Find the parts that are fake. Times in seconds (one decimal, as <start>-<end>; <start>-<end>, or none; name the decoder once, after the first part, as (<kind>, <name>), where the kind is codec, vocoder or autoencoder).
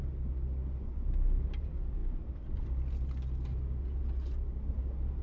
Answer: none